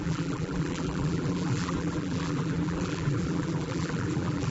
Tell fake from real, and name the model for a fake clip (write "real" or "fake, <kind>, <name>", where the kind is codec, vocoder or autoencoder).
fake, vocoder, BigVGAN v2